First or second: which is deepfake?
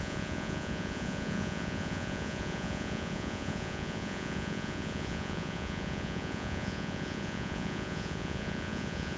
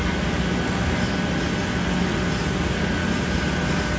first